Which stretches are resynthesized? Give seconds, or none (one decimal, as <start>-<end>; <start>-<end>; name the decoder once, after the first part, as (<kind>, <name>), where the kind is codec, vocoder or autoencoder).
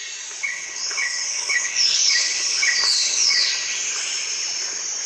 0.4-3.5 (codec, HILCodec)